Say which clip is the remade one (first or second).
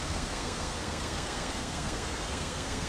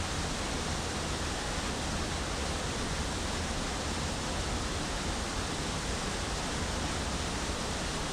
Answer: first